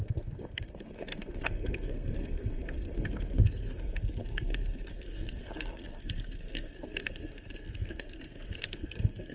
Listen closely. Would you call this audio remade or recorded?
remade